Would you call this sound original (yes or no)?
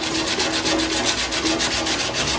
yes